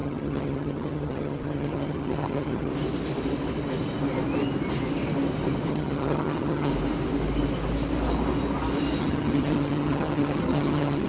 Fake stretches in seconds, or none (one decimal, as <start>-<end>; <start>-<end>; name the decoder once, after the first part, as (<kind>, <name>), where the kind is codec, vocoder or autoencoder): 0.0-2.7 (vocoder, HiFi-GAN); 5.7-6.7; 9.0-11.1